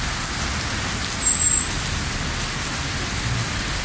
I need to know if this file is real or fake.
real